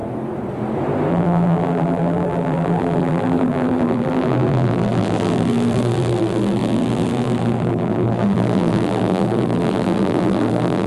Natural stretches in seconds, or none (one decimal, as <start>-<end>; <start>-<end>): 0.0-1.1

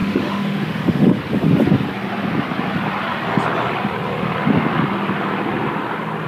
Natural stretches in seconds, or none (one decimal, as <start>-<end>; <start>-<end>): 1.2-6.3

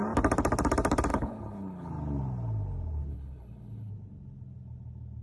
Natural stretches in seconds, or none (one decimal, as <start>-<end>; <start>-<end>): 0.0-1.1; 1.9-3.1; 3.9-5.2